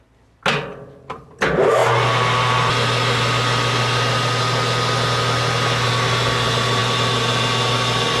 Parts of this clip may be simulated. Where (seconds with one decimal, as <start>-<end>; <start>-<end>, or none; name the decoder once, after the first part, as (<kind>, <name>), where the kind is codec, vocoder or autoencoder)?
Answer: none